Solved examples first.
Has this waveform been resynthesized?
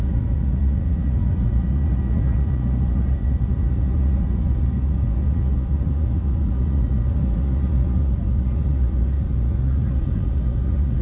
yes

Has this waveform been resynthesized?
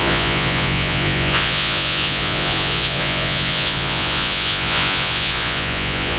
yes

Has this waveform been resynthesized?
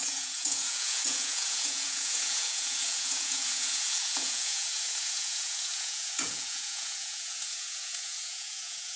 yes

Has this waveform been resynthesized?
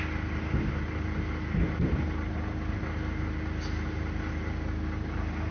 no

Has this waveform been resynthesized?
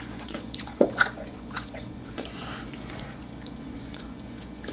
yes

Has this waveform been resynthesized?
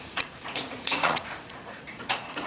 yes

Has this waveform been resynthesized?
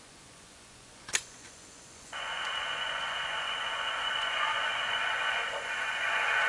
yes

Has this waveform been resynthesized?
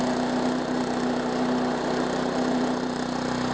no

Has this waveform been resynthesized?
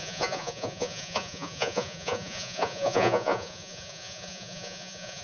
yes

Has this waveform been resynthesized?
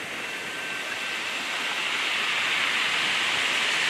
no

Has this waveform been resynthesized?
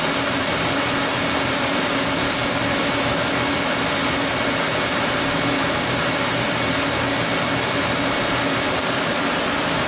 no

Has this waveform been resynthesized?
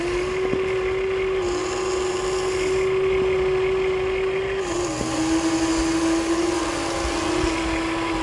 no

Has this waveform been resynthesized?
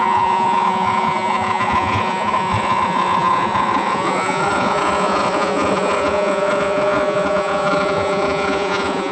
yes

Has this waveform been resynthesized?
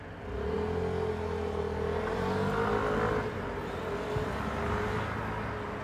no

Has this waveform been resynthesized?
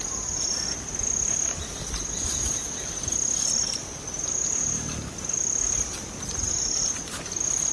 no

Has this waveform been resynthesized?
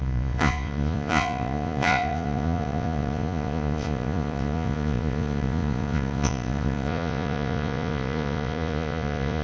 yes